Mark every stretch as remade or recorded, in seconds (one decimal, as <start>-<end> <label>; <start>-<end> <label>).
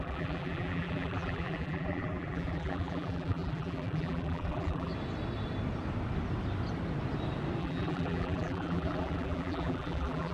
0.0-4.9 remade; 4.9-7.6 recorded; 7.6-10.3 remade